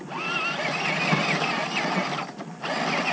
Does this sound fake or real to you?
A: real